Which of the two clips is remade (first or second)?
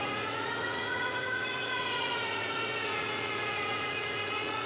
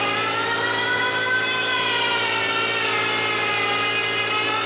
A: first